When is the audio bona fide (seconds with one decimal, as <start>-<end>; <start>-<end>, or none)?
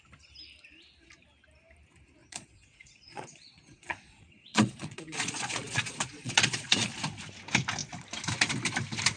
0.0-2.2; 6.9-9.2